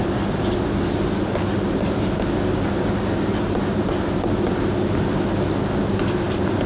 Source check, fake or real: real